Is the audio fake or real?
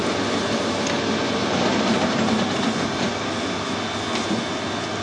real